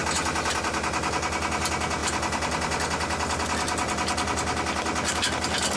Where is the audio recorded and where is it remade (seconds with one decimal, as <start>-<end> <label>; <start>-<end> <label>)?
0.0-5.8 recorded